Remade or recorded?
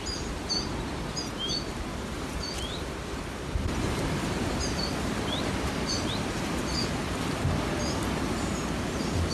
recorded